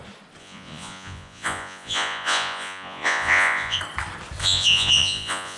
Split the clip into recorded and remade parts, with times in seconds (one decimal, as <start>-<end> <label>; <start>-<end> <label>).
0.0-0.4 recorded; 0.4-3.8 remade; 3.8-4.4 recorded; 4.4-5.6 remade